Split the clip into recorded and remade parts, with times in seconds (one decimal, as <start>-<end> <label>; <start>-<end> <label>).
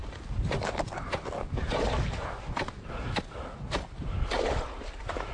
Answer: 0.0-5.3 recorded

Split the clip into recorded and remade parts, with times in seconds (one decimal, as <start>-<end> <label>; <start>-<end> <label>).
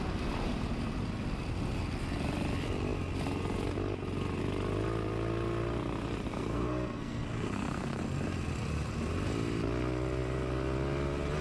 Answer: 0.0-6.3 recorded; 6.3-8.0 remade; 8.0-11.4 recorded